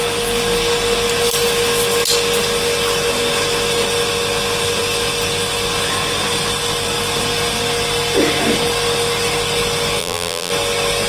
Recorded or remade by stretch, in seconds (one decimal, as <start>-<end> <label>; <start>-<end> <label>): 0.0-10.0 recorded; 10.0-10.5 remade; 10.5-11.1 recorded